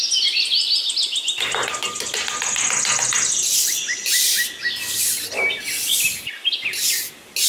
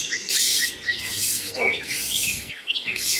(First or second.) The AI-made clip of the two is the second